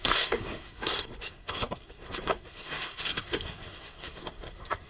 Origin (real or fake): fake